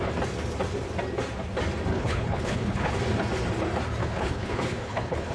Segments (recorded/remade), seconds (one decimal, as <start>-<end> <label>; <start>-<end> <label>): 0.0-1.9 recorded; 1.9-2.9 remade; 2.9-4.0 recorded; 4.0-5.3 remade